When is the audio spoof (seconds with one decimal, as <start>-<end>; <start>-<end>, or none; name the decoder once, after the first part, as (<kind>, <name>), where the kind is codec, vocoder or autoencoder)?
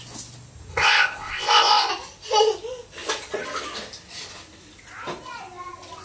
0.7-1.9 (codec, ZipCodec)